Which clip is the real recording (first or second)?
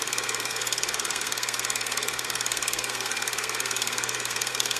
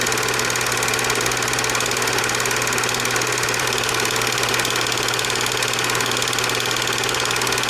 second